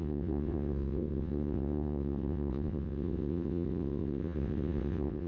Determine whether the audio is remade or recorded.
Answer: remade